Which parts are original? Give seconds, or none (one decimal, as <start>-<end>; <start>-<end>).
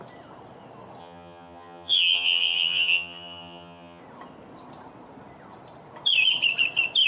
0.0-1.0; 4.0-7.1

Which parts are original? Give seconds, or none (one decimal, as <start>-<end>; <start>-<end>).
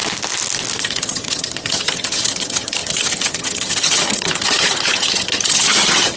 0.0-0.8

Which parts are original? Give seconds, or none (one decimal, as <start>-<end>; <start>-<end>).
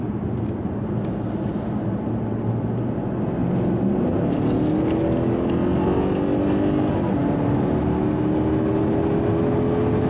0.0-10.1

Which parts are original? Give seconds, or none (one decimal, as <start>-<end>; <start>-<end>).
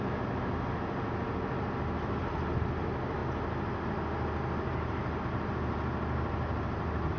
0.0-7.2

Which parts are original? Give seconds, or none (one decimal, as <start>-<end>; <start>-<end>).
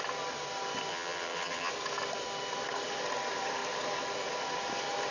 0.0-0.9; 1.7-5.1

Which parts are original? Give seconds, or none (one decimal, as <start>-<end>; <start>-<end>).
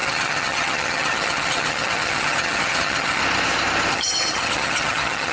3.2-3.9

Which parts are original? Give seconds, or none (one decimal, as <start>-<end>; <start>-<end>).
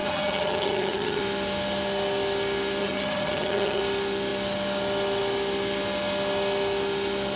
1.2-2.8; 3.8-7.4